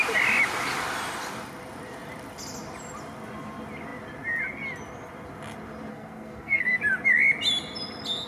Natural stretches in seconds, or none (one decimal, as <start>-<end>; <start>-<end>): 0.0-5.9; 6.8-8.3